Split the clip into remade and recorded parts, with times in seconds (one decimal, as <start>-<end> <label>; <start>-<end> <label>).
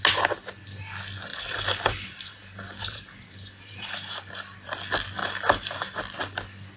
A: 0.0-1.3 recorded; 1.3-4.2 remade; 4.2-5.2 recorded; 5.2-6.0 remade; 6.0-6.8 recorded